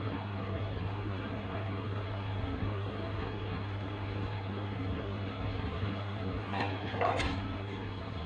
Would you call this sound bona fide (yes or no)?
no